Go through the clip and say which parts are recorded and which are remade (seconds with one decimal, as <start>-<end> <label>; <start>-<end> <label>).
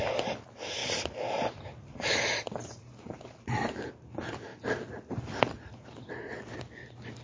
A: 0.0-0.8 recorded; 0.8-3.9 remade; 3.9-7.2 recorded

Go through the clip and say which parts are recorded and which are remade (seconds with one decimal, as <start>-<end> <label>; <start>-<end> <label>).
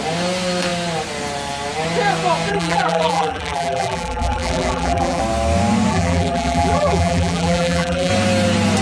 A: 0.0-2.5 recorded; 2.5-5.2 remade; 5.2-5.9 recorded; 5.9-8.1 remade; 8.1-8.8 recorded